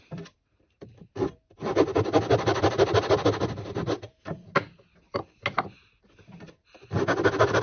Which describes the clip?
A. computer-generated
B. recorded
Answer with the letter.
B